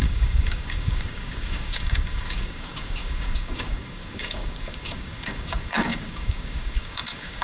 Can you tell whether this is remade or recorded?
remade